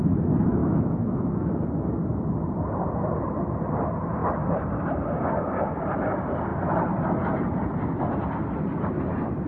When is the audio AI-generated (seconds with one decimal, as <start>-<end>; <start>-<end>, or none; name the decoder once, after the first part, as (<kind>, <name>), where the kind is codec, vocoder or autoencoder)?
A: 0.6-1.6 (autoencoder, DAC-VAE)

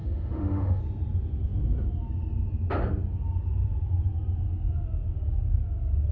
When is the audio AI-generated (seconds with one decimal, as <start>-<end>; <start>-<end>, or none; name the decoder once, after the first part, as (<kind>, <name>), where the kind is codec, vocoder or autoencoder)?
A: 0.0-0.8 (autoencoder, DAC-VAE)

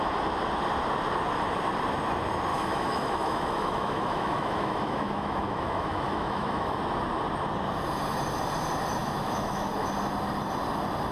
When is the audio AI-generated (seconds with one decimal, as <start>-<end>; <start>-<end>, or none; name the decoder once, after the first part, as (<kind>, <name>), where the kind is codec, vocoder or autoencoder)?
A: 2.5-6.8 (autoencoder, DAC-VAE); 9.0-9.7

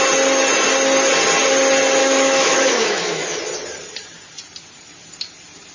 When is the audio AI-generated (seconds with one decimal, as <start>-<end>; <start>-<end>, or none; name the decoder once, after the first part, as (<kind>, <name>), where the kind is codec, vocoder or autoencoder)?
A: 2.0-3.4 (autoencoder, DAC-VAE)

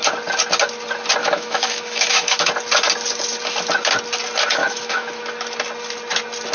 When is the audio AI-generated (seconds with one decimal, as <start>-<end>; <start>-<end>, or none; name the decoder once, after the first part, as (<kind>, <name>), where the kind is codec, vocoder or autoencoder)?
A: 1.2-2.5 (autoencoder, DAC-VAE); 4.6-5.2

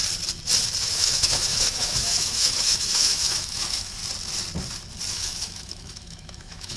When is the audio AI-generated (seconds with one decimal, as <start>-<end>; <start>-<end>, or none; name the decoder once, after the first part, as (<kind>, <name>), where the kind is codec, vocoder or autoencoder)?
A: 0.8-4.0 (autoencoder, DAC-VAE); 5.1-6.8